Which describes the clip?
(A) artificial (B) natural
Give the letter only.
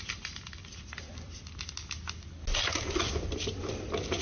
B